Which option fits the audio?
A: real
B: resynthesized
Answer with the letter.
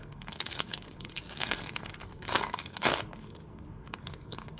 B